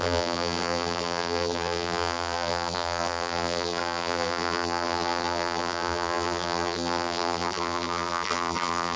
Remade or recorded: remade